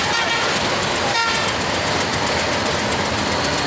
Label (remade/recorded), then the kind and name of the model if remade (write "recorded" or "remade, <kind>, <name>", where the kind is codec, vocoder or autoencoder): recorded